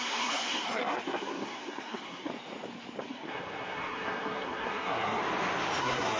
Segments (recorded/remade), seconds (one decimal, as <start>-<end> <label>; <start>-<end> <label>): 0.0-2.3 remade; 2.3-3.0 recorded; 3.0-5.2 remade; 5.2-5.8 recorded; 5.8-6.2 remade